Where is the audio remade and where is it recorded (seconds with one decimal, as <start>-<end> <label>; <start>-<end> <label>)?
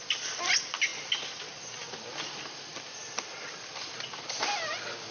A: 0.0-5.1 recorded